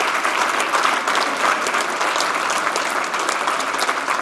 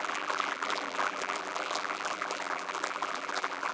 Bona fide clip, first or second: first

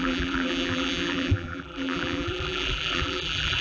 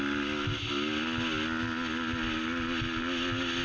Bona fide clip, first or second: second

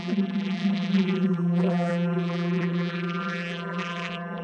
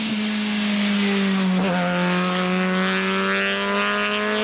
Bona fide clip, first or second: second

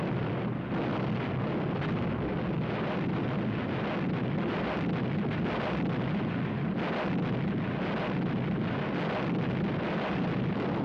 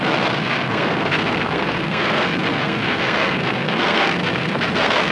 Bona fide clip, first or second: first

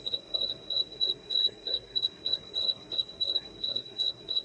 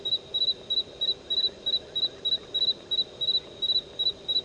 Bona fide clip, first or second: second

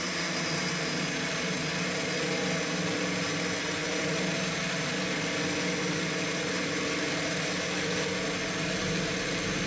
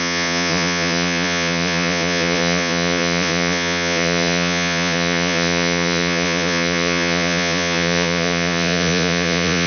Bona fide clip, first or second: first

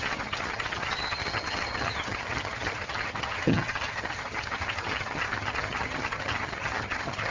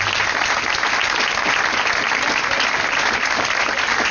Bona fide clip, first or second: second